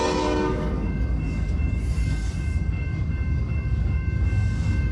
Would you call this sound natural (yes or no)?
no